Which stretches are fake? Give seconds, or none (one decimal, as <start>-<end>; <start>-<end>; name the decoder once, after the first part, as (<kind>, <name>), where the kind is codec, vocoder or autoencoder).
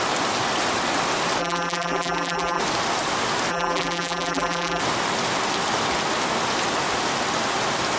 1.4-2.6 (vocoder, BigVGAN v2); 3.5-4.8